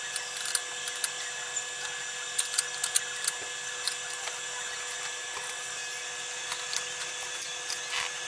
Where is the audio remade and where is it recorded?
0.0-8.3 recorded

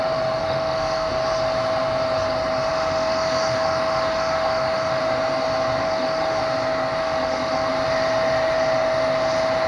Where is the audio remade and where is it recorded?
0.0-0.4 recorded; 0.4-1.1 remade; 1.1-2.7 recorded; 2.7-5.0 remade; 5.0-5.8 recorded; 5.8-6.4 remade; 6.4-7.0 recorded; 7.0-7.7 remade; 7.7-9.7 recorded

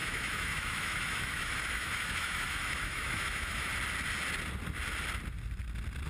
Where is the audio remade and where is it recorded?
0.0-3.7 remade; 3.7-6.1 recorded

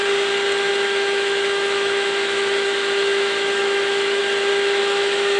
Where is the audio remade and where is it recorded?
0.0-0.7 recorded; 0.7-4.2 remade; 4.2-4.8 recorded; 4.8-5.4 remade

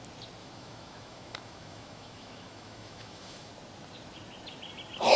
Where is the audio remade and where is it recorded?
0.0-0.4 recorded; 0.4-3.5 remade; 3.5-5.2 recorded